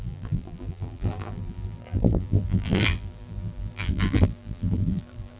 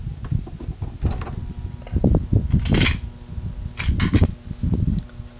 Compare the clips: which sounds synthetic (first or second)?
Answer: first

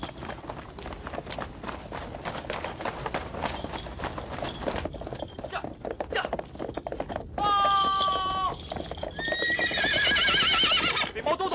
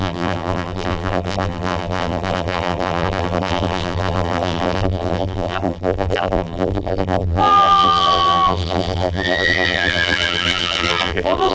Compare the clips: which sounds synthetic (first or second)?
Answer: second